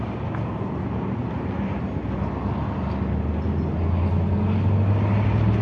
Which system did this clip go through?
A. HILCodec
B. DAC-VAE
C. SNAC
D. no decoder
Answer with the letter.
D